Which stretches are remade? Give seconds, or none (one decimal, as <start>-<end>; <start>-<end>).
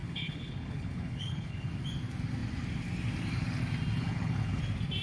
0.0-1.7; 4.0-4.6